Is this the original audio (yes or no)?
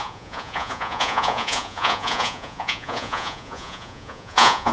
no